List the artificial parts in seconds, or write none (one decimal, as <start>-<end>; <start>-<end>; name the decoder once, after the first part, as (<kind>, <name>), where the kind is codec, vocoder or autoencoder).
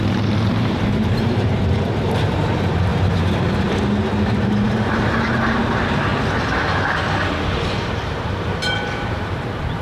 0.0-2.9 (vocoder, BigVGAN v2); 3.7-6.1; 7.8-9.8